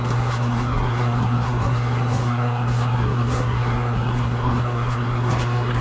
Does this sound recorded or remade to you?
remade